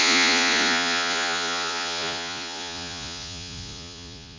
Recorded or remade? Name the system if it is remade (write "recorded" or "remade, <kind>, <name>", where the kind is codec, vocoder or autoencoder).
remade, vocoder, Vocos